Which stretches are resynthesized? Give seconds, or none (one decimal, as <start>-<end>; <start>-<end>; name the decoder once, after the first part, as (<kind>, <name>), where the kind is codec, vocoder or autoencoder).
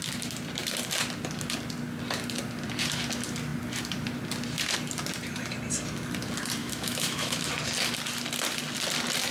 6.6-7.5 (autoencoder, DAC-VAE)